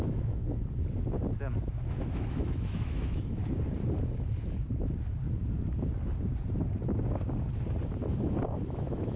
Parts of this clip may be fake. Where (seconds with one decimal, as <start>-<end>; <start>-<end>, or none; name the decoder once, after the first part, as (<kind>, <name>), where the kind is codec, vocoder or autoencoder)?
0.0-0.4 (autoencoder, DAC-VAE); 1.9-3.4; 8.1-9.2

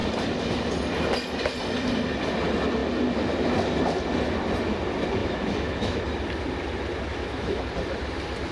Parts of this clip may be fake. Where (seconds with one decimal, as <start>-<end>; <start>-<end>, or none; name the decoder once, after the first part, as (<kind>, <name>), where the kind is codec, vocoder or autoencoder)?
5.2-6.0 (autoencoder, DAC-VAE); 7.1-7.6

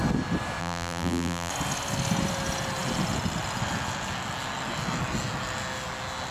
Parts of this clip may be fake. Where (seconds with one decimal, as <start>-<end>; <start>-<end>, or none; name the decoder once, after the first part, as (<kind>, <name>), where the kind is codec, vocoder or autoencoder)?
0.6-1.5 (vocoder, BigVGAN v2)

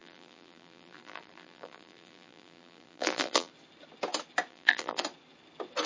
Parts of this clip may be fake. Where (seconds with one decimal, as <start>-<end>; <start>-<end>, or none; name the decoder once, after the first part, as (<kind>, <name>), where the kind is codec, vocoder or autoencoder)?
0.0-3.5 (vocoder, BigVGAN v2); 4.5-5.0

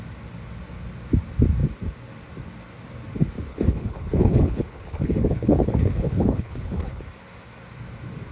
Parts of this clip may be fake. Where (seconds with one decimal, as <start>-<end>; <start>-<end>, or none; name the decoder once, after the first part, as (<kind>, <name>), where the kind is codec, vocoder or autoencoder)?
3.5-7.0 (codec, HILCodec)